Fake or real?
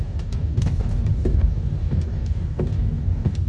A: fake